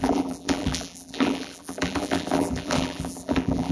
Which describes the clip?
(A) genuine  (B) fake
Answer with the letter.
B